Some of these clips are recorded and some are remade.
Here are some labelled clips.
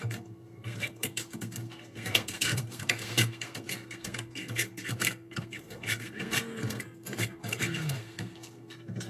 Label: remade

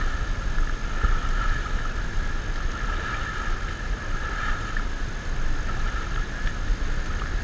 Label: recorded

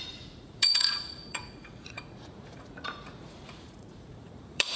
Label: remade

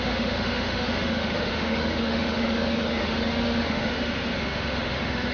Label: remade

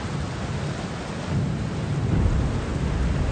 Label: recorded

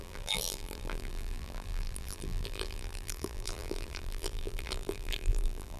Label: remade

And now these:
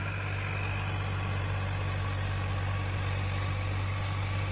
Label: recorded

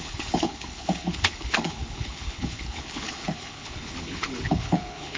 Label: remade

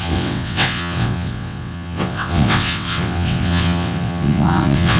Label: remade